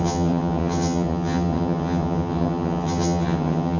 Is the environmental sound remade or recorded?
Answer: remade